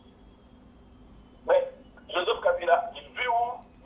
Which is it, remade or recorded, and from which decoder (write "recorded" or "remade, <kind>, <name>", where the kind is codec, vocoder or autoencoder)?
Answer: remade, vocoder, BigVGAN v2